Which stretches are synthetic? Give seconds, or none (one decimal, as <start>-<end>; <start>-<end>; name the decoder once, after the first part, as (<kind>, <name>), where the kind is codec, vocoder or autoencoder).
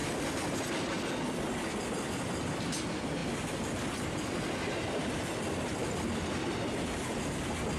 none